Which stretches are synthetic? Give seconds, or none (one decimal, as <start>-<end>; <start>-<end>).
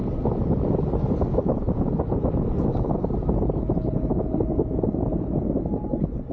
none